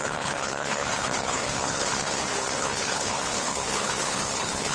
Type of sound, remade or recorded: remade